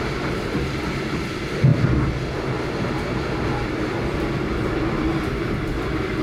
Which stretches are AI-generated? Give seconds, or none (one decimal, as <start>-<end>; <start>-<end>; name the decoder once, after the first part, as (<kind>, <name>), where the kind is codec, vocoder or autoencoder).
0.0-1.7 (vocoder, BigVGAN v2); 3.2-6.2